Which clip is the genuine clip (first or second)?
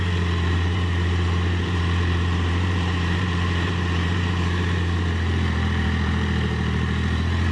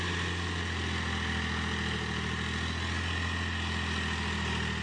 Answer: second